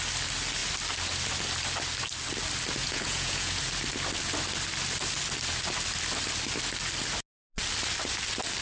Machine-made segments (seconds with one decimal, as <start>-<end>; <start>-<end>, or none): 2.8-3.6